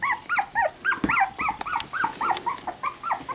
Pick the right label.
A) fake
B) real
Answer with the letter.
B